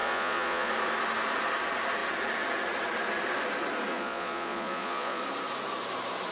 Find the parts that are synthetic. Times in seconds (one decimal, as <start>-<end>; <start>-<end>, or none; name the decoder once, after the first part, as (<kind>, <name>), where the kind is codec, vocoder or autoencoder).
0.0-0.7 (vocoder, Vocos); 3.9-5.2